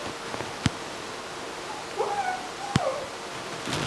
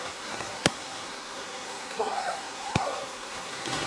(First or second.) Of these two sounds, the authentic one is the first